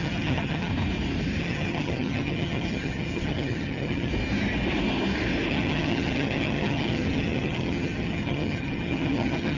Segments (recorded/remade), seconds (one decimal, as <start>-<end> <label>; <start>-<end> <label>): 0.0-0.7 remade; 0.7-1.4 recorded; 1.4-4.1 remade; 4.1-5.5 recorded; 5.5-9.6 remade